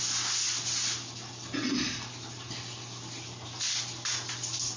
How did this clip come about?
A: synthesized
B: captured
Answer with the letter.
B